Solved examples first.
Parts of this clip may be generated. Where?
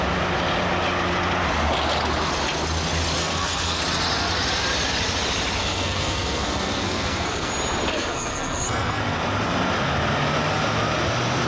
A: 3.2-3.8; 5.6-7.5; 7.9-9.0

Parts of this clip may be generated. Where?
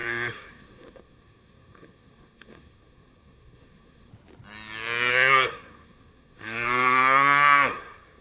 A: 0.0-4.1; 5.1-8.2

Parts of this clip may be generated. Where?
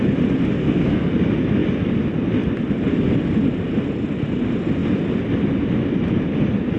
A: 0.6-1.1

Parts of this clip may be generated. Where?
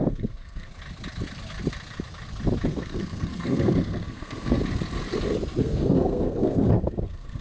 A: 0.0-0.7; 2.7-4.6; 5.6-7.4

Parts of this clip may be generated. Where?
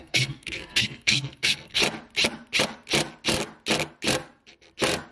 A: 0.0-1.8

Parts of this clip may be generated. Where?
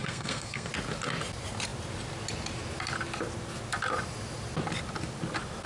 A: 0.0-0.7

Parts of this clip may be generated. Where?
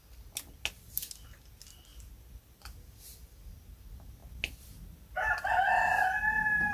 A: none